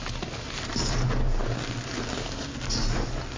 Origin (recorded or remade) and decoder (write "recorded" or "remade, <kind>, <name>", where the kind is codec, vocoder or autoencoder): recorded